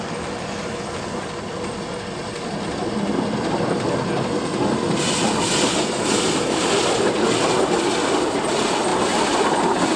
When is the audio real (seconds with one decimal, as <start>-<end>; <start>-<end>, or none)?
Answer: 0.0-10.0